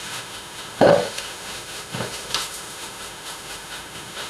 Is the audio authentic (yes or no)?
no